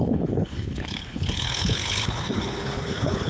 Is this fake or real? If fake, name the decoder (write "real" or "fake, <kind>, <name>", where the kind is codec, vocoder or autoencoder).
fake, codec, HILCodec